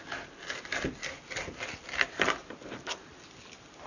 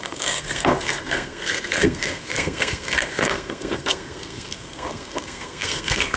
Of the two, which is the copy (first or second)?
second